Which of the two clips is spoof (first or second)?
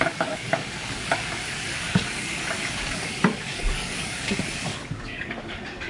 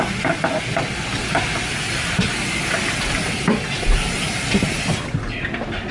first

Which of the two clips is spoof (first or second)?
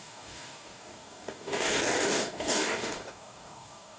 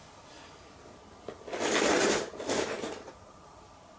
first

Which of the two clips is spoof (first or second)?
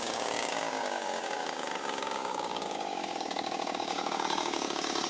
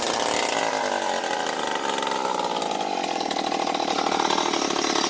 first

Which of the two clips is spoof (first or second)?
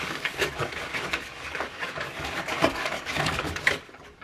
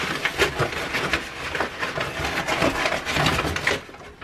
first